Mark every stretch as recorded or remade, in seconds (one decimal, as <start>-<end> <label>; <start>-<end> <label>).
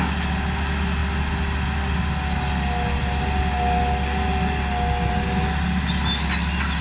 0.0-6.8 recorded